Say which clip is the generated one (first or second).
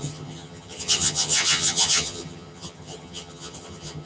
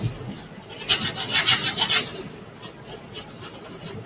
first